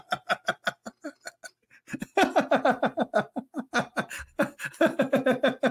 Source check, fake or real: real